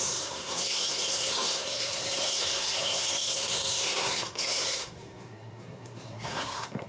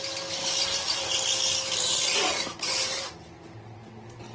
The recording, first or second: second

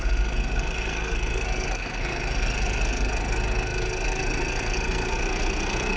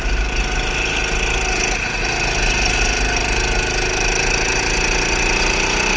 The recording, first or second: second